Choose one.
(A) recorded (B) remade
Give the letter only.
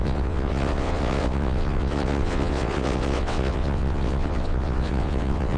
B